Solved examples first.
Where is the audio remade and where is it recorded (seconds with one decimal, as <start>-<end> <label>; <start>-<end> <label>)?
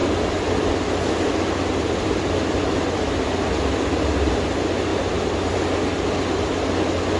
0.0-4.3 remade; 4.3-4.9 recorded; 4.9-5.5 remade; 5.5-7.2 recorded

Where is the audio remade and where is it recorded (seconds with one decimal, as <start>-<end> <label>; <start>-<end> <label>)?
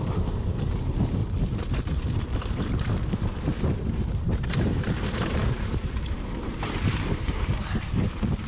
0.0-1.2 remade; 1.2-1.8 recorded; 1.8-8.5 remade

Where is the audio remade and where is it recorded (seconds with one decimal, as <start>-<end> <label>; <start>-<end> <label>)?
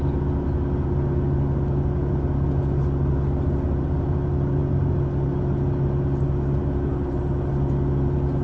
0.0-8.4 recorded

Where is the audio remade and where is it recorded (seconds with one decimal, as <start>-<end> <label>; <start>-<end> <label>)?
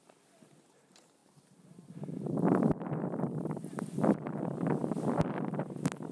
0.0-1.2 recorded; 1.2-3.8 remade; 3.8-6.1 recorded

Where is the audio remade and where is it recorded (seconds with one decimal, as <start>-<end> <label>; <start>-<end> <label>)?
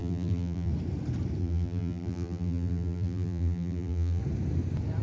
0.0-0.7 remade; 0.7-1.4 recorded; 1.4-4.2 remade; 4.2-5.0 recorded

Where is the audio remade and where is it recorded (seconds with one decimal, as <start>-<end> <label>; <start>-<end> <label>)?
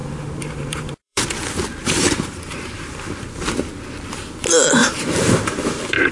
0.0-1.3 remade; 1.3-1.8 recorded; 1.8-3.2 remade; 3.2-4.8 recorded; 4.8-6.1 remade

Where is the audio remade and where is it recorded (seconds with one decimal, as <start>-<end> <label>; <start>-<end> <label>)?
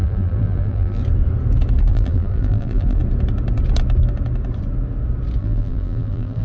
0.0-1.0 remade; 1.0-1.9 recorded; 1.9-3.0 remade; 3.0-5.4 recorded; 5.4-6.4 remade